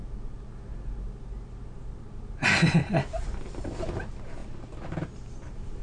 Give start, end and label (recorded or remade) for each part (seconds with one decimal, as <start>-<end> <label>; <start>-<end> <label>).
0.0-5.8 recorded